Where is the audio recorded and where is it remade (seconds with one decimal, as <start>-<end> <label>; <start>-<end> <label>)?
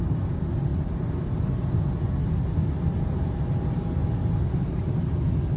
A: 0.0-5.6 recorded